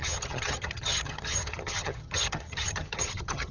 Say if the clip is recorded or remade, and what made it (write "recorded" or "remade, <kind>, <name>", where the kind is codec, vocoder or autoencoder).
remade, vocoder, HiFi-GAN